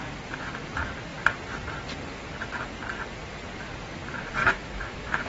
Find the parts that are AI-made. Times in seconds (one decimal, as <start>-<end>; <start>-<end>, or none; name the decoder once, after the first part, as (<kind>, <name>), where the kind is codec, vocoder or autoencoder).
4.4-5.3 (autoencoder, DAC-VAE)